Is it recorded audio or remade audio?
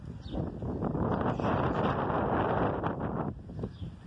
recorded